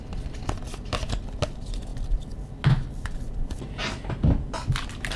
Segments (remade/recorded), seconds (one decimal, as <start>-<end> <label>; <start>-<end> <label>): 0.0-5.2 recorded